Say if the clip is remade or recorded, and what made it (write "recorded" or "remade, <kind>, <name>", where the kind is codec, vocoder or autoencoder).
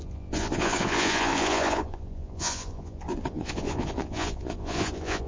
remade, vocoder, Vocos